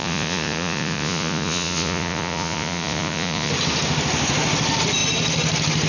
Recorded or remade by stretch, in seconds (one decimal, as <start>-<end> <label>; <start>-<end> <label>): 0.0-3.5 remade; 3.5-5.9 recorded